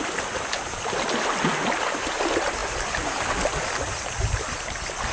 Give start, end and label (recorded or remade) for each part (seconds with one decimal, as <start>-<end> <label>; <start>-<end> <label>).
0.0-5.1 recorded